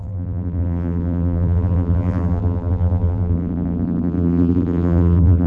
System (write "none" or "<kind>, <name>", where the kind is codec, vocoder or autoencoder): vocoder, BigVGAN v2